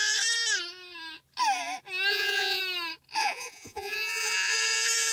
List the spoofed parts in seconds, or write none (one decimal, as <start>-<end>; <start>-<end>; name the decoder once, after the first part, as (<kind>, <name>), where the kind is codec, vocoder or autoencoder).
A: 2.1-2.6 (vocoder, Vocos); 3.2-4.5